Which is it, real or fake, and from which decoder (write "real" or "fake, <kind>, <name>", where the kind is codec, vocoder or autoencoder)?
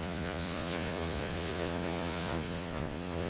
fake, vocoder, Vocos